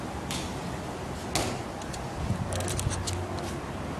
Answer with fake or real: real